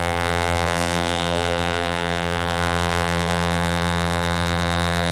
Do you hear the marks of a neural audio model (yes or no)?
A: yes